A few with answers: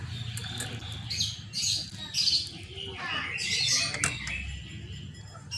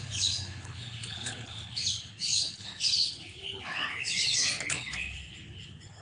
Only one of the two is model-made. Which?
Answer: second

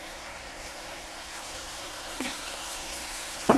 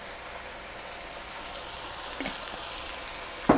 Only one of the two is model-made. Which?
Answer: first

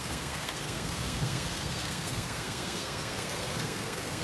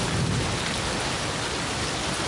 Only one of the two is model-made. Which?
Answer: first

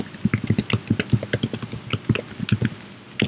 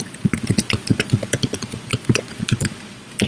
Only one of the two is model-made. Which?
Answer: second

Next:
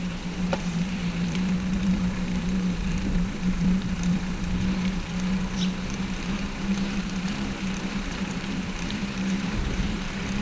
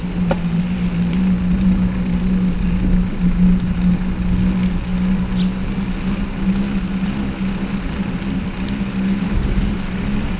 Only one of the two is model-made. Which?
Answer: first